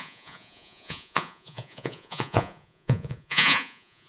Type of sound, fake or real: fake